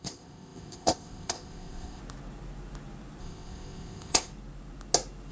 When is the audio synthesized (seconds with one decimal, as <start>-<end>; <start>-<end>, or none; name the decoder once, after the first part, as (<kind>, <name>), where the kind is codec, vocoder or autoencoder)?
0.0-2.0 (codec, ZipCodec); 3.2-4.3